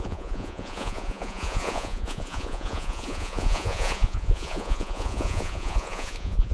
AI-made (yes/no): yes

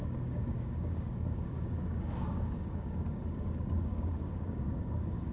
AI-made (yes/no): yes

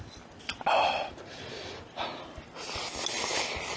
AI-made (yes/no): no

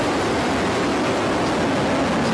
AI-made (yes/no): no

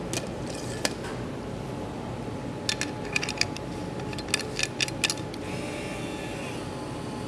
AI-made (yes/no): no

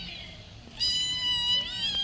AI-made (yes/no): no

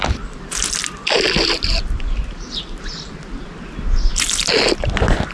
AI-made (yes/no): no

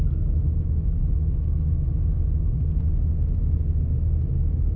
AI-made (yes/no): no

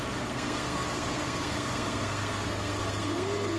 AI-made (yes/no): yes